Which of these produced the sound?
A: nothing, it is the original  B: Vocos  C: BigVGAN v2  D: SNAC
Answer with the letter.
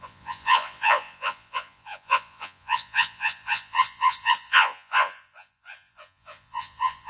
B